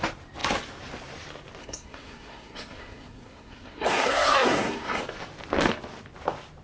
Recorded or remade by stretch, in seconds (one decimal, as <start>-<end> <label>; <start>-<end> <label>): 0.0-1.6 recorded; 1.6-5.0 remade; 5.0-6.6 recorded